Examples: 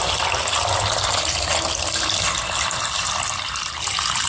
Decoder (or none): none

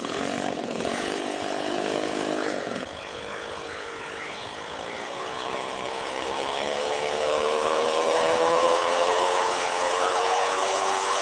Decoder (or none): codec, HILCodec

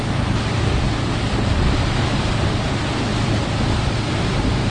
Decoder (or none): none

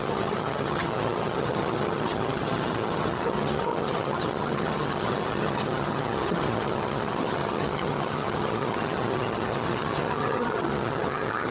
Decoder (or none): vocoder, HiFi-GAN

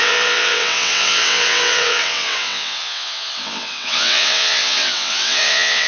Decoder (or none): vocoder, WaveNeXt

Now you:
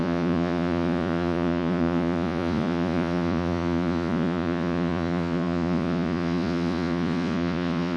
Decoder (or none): vocoder, Vocos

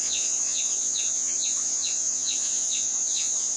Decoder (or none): vocoder, Vocos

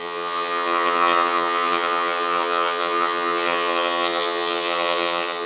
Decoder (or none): vocoder, HiFi-GAN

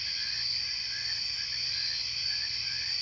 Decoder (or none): none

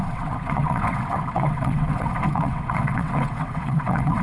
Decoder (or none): vocoder, WaveNeXt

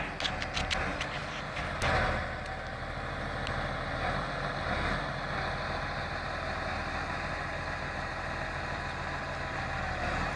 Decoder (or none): none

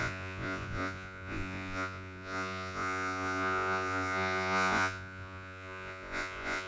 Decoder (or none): vocoder, Vocos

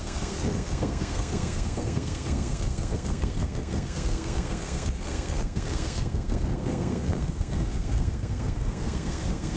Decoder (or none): codec, SNAC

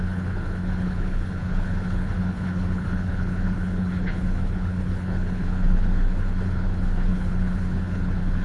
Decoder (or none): codec, HILCodec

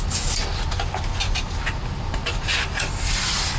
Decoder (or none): none